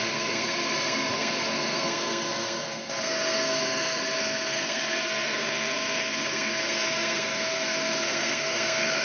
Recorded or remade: remade